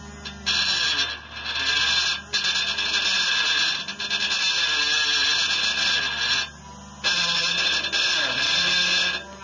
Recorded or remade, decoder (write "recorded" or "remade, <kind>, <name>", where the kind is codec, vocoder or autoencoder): recorded